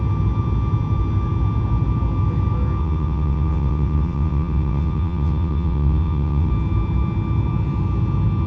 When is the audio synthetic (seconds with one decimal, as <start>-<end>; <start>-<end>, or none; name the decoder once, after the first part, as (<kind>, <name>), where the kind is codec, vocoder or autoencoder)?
2.8-6.5 (vocoder, WaveNeXt)